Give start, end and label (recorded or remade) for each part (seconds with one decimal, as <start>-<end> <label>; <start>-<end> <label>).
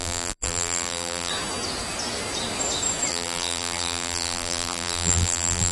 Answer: 0.0-1.3 remade; 1.3-3.1 recorded; 3.1-5.7 remade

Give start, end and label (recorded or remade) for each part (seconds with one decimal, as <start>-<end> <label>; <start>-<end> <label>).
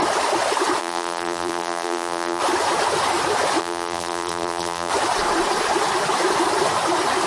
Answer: 0.0-0.8 recorded; 0.8-2.4 remade; 2.4-3.6 recorded; 3.6-4.9 remade; 4.9-7.3 recorded